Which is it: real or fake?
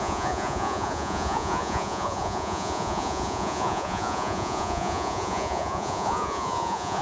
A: fake